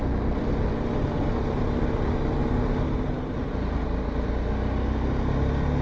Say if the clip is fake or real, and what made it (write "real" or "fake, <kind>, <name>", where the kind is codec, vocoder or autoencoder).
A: real